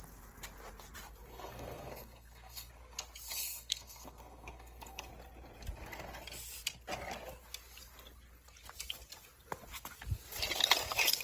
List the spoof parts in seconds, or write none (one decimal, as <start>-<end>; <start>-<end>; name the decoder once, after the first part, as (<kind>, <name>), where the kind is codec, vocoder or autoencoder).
1.3-2.7 (codec, SNAC); 3.3-5.1